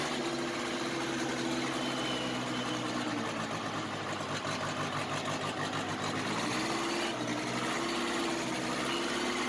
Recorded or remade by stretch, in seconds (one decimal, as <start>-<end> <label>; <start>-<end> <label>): 0.0-9.5 recorded